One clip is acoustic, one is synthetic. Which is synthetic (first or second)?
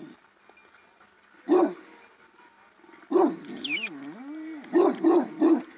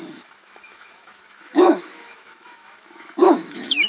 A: second